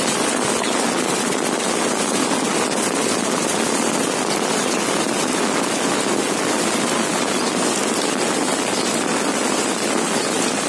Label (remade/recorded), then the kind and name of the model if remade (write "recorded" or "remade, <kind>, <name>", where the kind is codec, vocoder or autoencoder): recorded